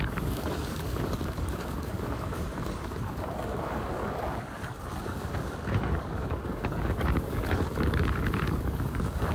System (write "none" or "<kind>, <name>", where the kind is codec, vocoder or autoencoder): codec, DAC